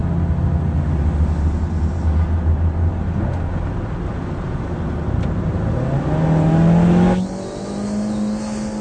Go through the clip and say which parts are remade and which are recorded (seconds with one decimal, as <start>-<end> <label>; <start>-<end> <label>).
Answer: 0.0-8.8 recorded

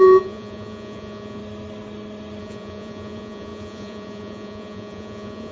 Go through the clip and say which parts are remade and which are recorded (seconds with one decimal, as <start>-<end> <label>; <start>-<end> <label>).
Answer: 0.0-1.4 remade; 1.4-2.4 recorded; 2.4-5.5 remade

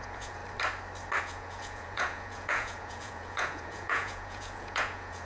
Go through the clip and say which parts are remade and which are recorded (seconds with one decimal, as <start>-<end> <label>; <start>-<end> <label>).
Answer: 0.0-0.4 remade; 0.4-1.2 recorded; 1.2-5.3 remade